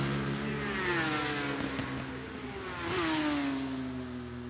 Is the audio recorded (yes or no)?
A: yes